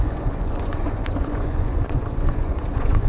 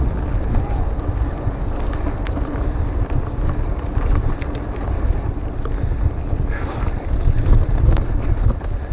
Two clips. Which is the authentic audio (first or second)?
second